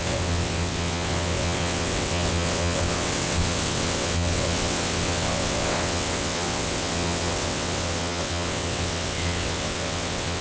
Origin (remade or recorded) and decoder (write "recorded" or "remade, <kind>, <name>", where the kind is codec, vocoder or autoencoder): remade, vocoder, WaveNeXt